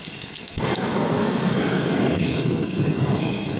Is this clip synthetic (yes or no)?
yes